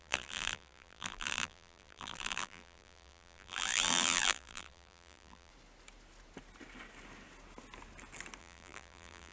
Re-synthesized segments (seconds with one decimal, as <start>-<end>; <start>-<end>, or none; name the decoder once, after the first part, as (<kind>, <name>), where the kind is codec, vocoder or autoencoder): 0.0-5.5 (vocoder, BigVGAN v2); 8.4-9.3